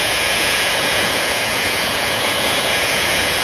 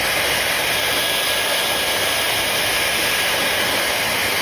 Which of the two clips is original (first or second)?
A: second